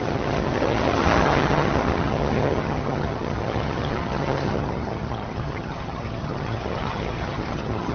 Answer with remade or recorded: remade